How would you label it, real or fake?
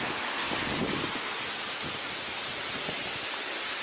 real